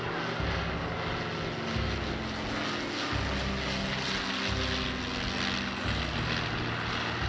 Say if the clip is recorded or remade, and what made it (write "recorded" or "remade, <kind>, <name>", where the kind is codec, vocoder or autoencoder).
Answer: recorded